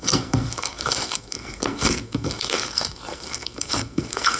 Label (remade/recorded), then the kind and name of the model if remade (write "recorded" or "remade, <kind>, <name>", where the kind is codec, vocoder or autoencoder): remade, codec, SNAC